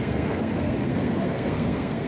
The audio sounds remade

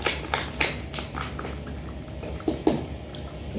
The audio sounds recorded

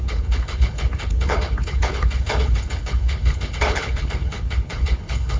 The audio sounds remade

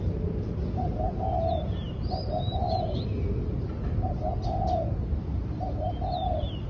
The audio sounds recorded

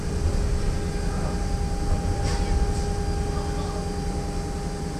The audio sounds recorded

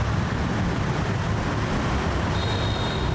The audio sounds remade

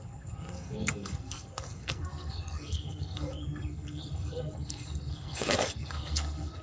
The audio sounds remade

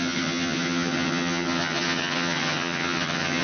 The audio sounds remade